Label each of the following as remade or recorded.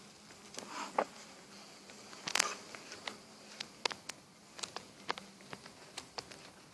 recorded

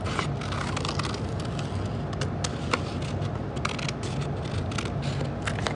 recorded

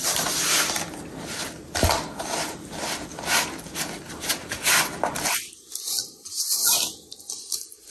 recorded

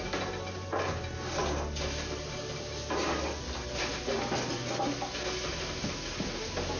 recorded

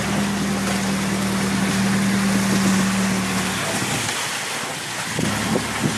recorded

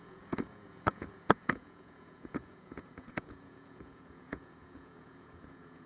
remade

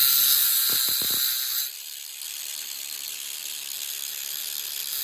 recorded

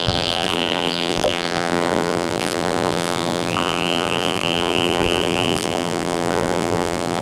remade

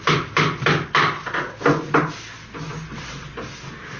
recorded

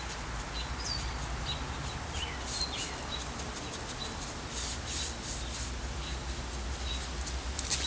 recorded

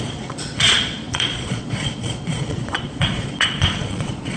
remade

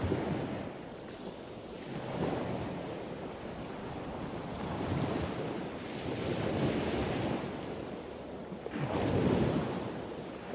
recorded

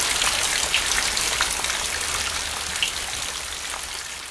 recorded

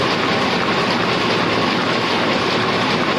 recorded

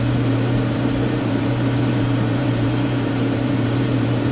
remade